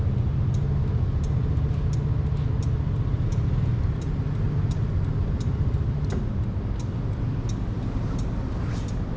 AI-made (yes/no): no